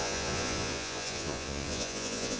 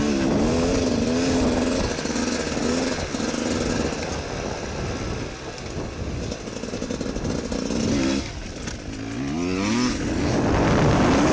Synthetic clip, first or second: first